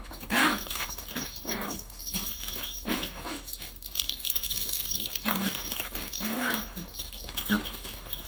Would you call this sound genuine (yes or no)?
no